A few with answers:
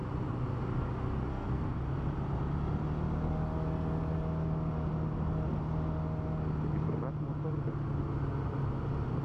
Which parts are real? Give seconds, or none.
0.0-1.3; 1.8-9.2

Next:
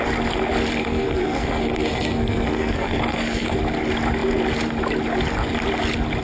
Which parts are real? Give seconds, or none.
0.0-0.8; 3.6-6.2

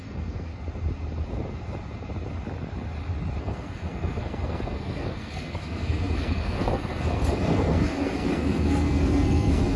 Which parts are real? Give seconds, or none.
0.5-3.4

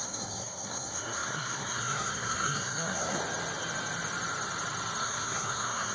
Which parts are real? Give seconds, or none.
3.2-5.0

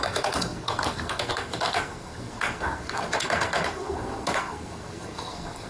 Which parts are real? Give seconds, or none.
none

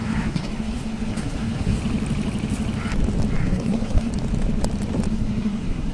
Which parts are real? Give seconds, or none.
1.8-3.4; 4.1-5.1

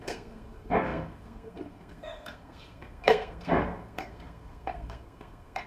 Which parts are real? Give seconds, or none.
none

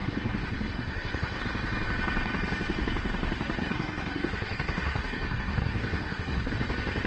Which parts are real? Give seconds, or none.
1.4-3.6; 6.5-7.1